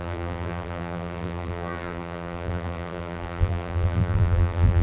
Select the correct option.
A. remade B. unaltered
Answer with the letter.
A